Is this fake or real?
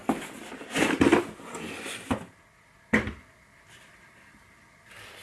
real